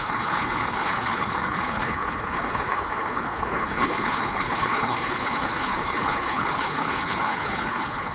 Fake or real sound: fake